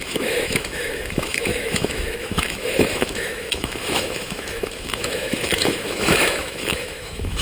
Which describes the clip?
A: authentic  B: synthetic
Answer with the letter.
B